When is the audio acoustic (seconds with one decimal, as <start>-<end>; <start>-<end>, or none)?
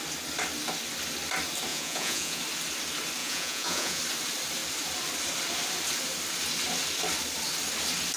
0.0-1.7; 2.4-3.2; 4.0-8.2